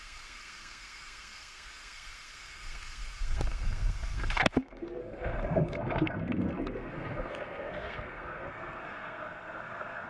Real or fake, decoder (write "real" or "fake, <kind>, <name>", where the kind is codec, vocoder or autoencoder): fake, codec, SNAC